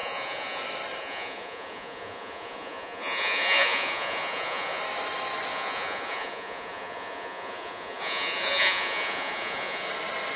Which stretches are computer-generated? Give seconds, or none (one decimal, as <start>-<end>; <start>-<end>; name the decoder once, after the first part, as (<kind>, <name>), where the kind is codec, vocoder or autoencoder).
0.0-0.6 (vocoder, Vocos); 1.0-4.8; 5.5-9.9